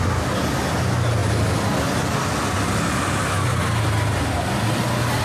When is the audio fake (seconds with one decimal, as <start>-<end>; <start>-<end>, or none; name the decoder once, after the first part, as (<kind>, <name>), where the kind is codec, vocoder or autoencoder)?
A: 3.5-4.4 (vocoder, BigVGAN v2)